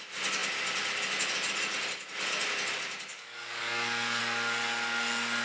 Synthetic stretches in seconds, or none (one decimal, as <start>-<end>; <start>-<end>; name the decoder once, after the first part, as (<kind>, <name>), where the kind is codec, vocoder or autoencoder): 3.1-4.2 (codec, DAC)